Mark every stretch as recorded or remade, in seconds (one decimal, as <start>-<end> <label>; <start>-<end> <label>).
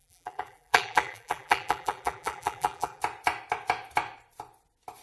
0.0-3.0 remade; 3.0-5.0 recorded